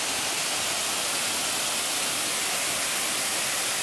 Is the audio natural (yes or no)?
yes